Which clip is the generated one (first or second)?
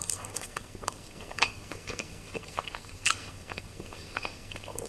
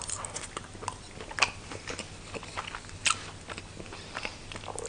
first